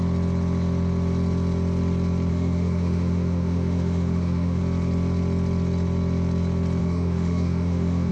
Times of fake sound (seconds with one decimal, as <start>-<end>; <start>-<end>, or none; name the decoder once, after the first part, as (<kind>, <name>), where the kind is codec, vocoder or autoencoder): 2.3-4.6 (autoencoder, DAC-VAE); 6.8-8.1